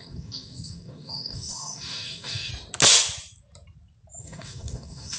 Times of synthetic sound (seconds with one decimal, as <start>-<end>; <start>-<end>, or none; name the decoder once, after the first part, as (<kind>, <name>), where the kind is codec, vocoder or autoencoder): 0.0-2.5 (codec, DAC); 4.2-5.2